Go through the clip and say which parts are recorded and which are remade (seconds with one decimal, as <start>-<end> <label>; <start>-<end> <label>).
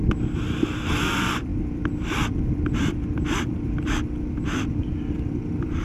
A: 0.0-5.8 remade